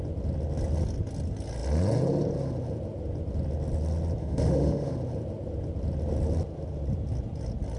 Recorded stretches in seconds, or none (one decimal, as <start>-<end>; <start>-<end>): 0.0-4.2; 4.9-7.8

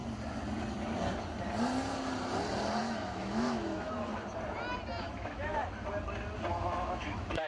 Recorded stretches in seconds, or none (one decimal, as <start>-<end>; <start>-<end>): 0.0-2.8; 4.1-5.0; 5.6-6.5

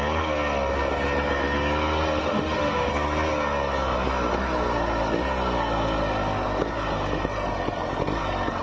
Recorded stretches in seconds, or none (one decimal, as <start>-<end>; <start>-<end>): 0.0-2.2; 2.9-8.6

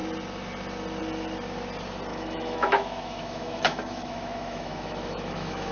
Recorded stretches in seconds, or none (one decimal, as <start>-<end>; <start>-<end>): 0.0-2.1

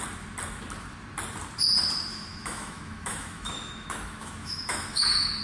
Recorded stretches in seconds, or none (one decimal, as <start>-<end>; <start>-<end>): 0.0-2.1